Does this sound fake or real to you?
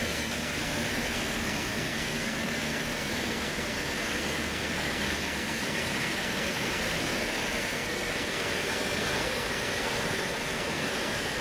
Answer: fake